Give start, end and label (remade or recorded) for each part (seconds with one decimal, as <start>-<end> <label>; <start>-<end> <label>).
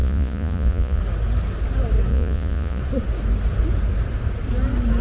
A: 0.0-1.0 remade; 1.0-2.1 recorded; 2.1-2.8 remade; 2.8-5.0 recorded